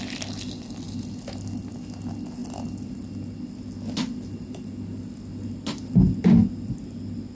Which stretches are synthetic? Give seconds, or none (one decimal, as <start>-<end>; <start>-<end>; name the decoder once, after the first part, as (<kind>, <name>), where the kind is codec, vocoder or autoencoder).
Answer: none